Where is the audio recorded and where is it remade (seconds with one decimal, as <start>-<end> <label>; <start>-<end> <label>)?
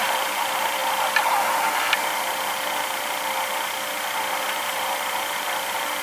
0.0-0.8 remade; 0.8-4.4 recorded; 4.4-6.0 remade